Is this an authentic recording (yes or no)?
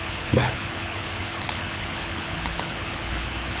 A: no